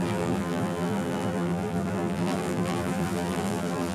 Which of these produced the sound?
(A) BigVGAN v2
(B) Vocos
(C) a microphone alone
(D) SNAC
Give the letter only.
A